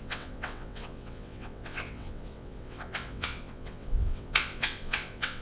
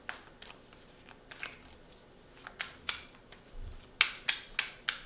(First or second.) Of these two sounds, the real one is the second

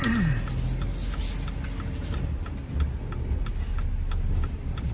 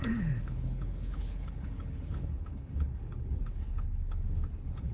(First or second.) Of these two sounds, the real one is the first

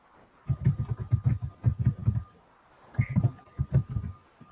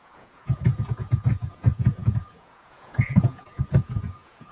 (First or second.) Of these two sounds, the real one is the first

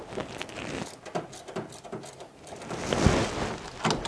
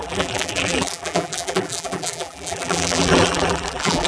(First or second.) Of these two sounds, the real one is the first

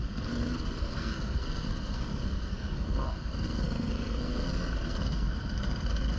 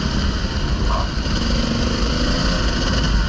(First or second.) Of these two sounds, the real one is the second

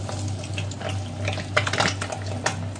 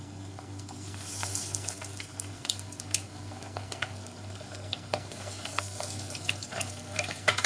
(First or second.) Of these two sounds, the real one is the first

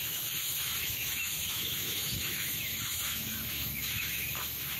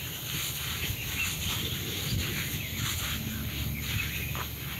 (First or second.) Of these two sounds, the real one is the second